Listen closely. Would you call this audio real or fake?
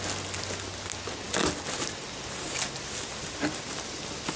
real